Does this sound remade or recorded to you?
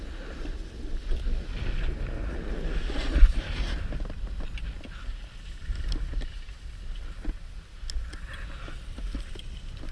recorded